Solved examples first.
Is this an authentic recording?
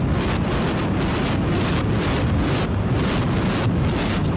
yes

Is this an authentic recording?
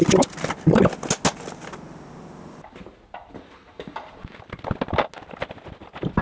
yes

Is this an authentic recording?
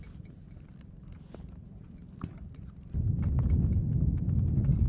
yes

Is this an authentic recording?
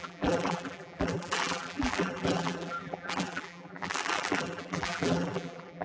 no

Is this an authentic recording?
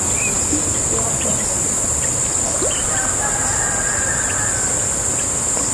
yes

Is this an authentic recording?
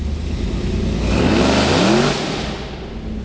yes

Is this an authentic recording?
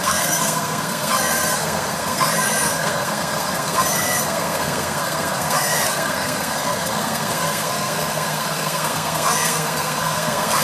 no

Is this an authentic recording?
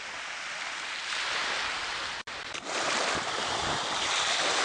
yes